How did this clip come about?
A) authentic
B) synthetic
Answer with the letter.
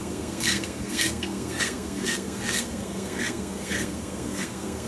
B